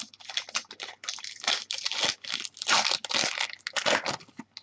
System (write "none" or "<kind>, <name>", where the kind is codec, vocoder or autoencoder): none